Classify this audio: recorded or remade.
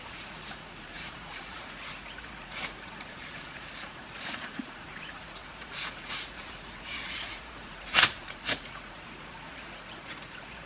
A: remade